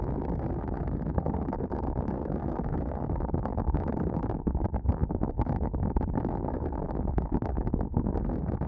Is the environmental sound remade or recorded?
remade